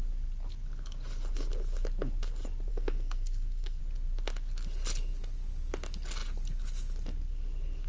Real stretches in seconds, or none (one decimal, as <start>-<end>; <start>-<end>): 0.0-2.7; 3.8-7.9